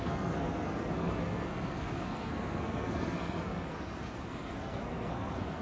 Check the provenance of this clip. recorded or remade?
remade